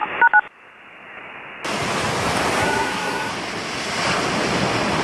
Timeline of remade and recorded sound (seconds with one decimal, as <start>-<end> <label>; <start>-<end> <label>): 0.0-2.6 recorded; 2.6-3.3 remade; 3.3-5.0 recorded